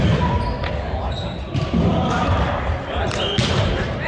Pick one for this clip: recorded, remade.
recorded